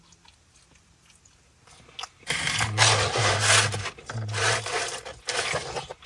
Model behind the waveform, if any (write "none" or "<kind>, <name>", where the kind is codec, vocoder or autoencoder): none